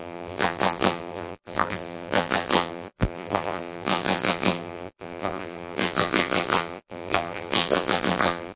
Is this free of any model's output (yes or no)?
no